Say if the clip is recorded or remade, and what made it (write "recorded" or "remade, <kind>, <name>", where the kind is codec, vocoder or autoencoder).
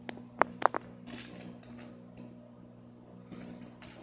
recorded